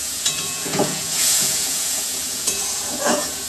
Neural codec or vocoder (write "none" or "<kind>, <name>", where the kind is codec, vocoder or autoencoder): vocoder, Vocos